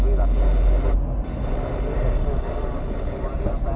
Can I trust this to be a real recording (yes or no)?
yes